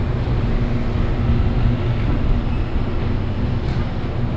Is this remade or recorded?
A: recorded